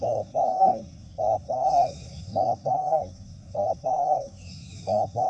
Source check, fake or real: fake